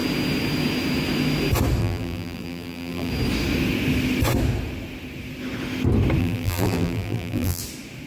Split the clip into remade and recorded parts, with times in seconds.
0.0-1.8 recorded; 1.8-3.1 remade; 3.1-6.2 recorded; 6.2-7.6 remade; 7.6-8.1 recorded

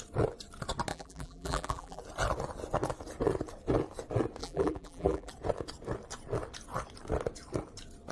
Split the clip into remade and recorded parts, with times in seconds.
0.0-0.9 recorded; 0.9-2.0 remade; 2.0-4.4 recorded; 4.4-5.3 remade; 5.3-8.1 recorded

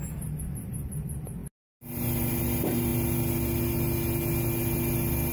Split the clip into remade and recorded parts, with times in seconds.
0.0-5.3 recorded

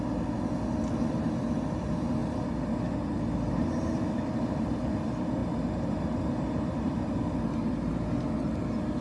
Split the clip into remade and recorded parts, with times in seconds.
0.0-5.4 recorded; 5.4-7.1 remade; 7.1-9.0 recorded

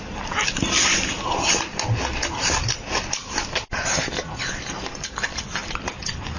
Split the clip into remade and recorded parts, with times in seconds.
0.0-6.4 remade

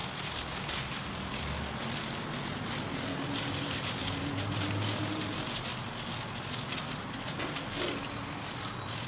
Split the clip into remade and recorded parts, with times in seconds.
0.0-0.7 recorded; 0.7-5.7 remade; 5.7-6.3 recorded; 6.3-9.1 remade

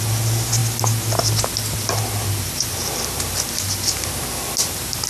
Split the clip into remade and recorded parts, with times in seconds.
0.0-5.1 recorded